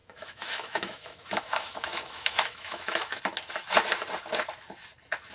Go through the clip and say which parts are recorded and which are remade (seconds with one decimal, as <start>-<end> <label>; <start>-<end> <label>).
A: 0.0-3.2 remade; 3.2-5.3 recorded